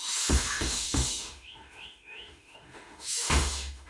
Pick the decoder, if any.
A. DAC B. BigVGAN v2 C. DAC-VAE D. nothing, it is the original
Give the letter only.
C